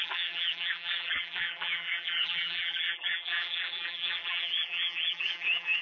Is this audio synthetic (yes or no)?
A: yes